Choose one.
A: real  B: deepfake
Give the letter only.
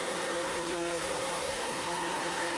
B